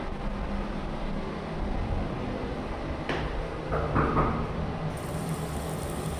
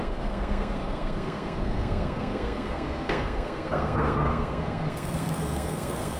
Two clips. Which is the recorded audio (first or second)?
first